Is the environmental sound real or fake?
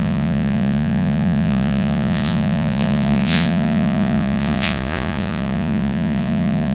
fake